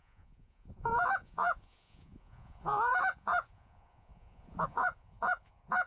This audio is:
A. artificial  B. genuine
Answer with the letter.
A